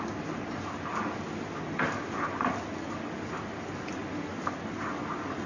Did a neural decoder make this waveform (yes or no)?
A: no